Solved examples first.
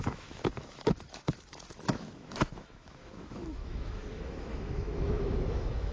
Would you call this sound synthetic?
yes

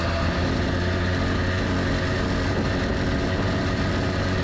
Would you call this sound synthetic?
no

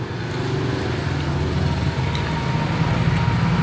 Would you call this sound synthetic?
no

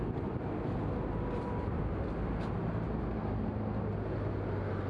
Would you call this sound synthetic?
no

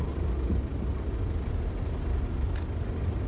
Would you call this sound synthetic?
no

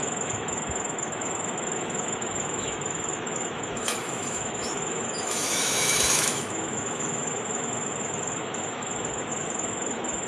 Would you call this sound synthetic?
yes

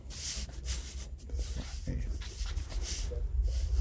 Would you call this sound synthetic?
no